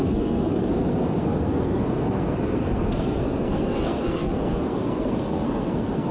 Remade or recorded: remade